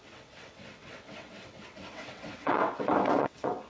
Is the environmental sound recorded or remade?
remade